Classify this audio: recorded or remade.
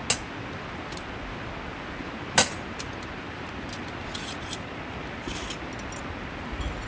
recorded